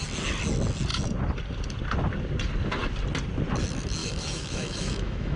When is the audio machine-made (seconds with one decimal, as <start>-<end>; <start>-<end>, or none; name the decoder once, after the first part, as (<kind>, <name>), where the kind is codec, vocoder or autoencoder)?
4.0-5.4 (autoencoder, DAC-VAE)